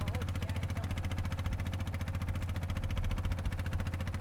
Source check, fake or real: real